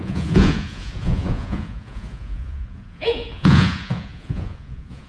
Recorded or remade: remade